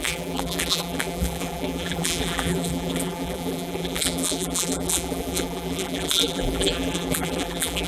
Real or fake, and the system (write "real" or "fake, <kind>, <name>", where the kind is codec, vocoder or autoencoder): fake, vocoder, BigVGAN v2